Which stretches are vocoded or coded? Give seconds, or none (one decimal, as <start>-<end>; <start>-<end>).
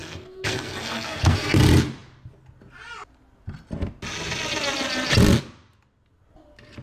0.0-1.6